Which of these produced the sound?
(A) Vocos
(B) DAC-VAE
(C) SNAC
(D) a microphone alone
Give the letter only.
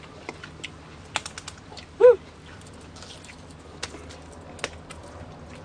D